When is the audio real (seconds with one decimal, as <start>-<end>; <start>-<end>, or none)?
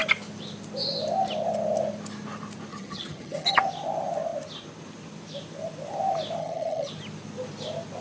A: 0.0-2.7; 3.6-6.4; 6.9-8.0